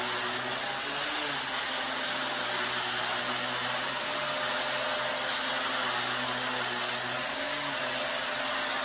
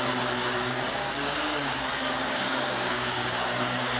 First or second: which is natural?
first